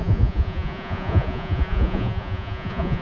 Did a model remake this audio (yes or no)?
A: yes